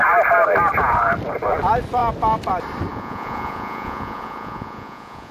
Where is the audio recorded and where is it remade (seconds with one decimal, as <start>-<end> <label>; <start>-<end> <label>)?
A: 0.0-2.9 recorded; 2.9-5.3 remade